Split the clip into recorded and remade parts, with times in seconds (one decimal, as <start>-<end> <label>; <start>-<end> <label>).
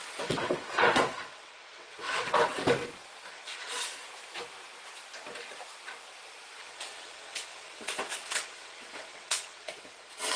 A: 0.0-2.6 remade; 2.6-3.3 recorded; 3.3-3.8 remade; 3.8-6.6 recorded; 6.6-10.4 remade